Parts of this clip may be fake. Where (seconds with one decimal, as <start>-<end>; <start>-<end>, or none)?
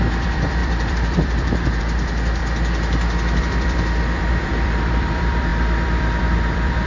0.0-2.4; 3.4-6.9